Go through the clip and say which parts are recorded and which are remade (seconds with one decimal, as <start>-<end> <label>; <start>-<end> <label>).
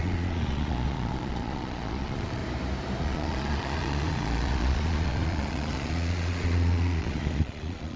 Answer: 0.0-2.4 remade; 2.4-3.0 recorded; 3.0-8.0 remade